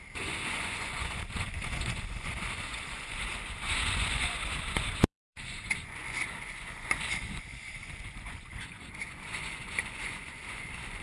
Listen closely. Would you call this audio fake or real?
fake